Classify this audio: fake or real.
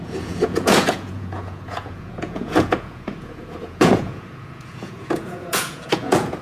fake